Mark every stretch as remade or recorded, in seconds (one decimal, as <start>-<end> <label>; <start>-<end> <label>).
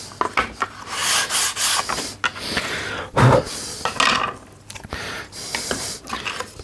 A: 0.0-6.6 recorded